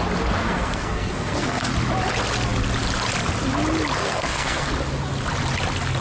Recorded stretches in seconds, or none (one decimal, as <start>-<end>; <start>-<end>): 0.0-0.4; 1.7-4.0; 4.7-6.0